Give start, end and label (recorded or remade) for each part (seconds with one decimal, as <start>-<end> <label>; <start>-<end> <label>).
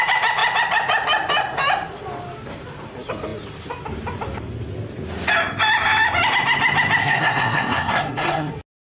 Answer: 0.0-7.0 recorded; 7.0-8.5 remade; 8.5-8.9 recorded